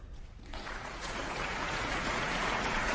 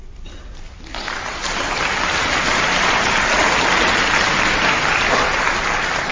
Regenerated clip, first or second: first